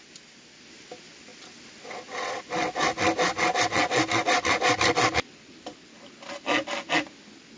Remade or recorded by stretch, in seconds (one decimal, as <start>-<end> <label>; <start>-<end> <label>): 0.0-7.6 recorded